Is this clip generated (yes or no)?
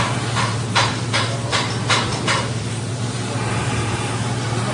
yes